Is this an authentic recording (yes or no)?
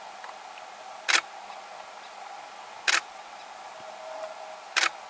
yes